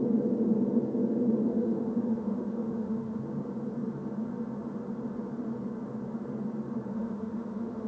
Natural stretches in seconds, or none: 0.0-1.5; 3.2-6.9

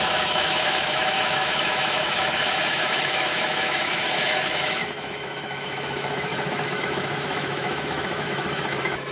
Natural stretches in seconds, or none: none

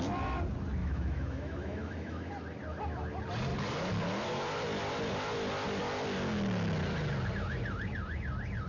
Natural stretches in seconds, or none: 0.0-0.8; 2.3-8.7